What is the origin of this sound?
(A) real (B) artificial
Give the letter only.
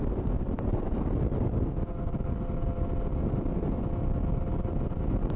A